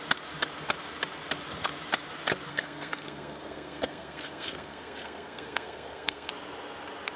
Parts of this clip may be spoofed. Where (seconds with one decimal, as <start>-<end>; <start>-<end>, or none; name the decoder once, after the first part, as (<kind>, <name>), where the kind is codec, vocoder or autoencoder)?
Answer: 2.5-6.3 (codec, SNAC)